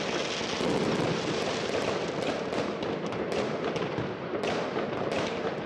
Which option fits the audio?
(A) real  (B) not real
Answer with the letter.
A